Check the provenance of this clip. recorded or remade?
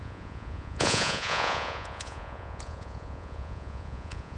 remade